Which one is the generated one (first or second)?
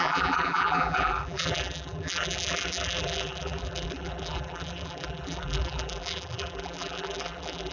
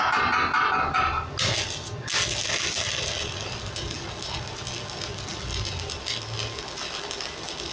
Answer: first